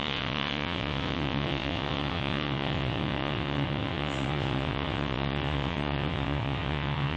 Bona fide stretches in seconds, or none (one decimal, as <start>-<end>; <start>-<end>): none